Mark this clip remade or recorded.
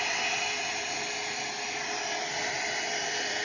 recorded